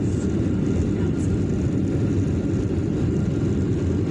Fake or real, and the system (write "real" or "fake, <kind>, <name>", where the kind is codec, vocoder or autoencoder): real